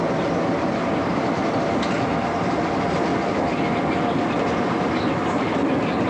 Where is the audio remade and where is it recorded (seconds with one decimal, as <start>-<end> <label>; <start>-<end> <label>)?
0.0-6.1 recorded